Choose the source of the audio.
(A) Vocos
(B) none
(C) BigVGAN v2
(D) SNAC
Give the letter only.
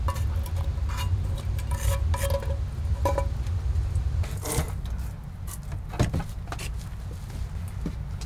B